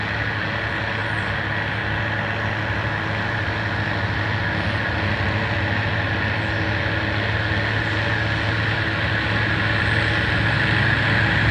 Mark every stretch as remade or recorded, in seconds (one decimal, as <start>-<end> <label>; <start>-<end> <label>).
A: 0.0-11.5 recorded